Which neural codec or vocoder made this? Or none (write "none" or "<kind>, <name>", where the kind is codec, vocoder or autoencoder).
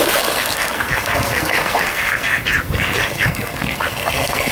codec, SNAC